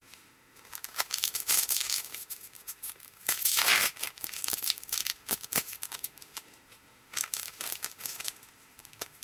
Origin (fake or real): fake